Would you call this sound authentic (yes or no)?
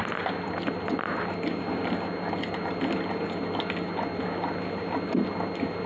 yes